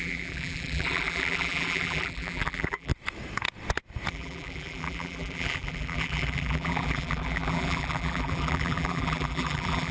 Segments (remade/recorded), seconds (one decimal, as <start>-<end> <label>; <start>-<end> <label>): 0.0-2.9 remade; 2.9-4.1 recorded; 4.1-9.9 remade